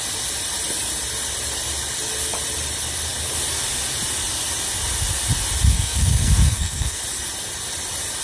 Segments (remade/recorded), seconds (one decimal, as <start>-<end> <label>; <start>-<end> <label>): 0.0-5.7 recorded; 5.7-7.0 remade; 7.0-8.2 recorded